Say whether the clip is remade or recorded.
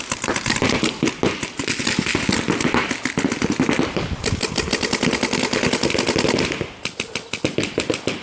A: recorded